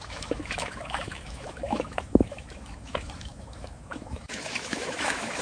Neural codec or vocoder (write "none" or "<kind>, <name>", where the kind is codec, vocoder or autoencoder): autoencoder, DAC-VAE